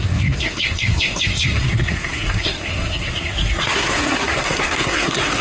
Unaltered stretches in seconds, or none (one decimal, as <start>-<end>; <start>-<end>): none